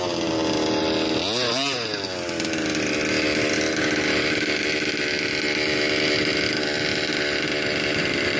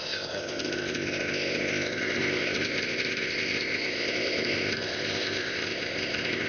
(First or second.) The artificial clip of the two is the second